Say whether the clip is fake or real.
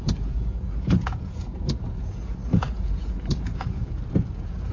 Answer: fake